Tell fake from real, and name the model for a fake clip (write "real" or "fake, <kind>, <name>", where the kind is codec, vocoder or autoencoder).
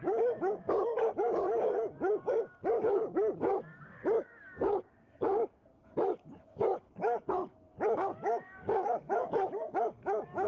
fake, codec, DAC